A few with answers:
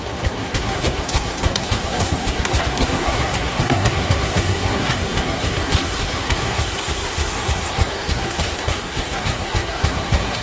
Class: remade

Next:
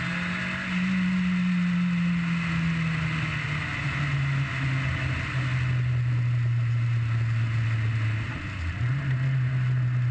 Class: recorded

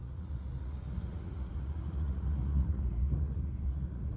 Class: remade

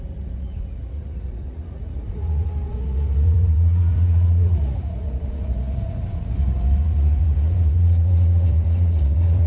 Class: remade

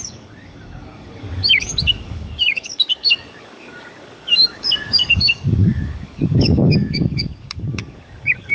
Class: remade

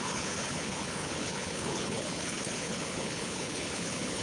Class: remade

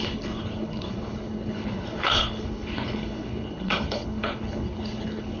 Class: remade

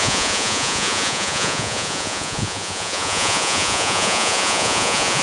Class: remade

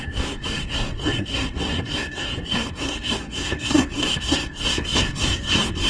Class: remade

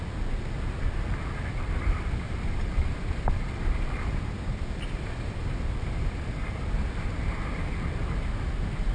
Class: recorded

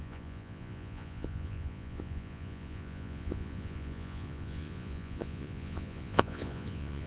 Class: remade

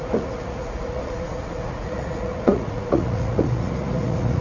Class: remade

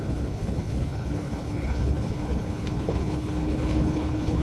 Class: remade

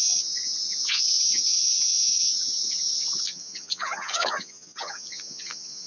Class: remade